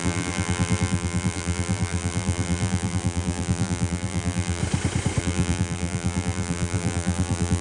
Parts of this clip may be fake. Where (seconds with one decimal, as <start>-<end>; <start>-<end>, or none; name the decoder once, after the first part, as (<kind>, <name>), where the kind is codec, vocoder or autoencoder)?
0.0-4.6 (vocoder, BigVGAN v2); 5.2-7.6